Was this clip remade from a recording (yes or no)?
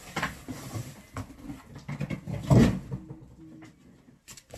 no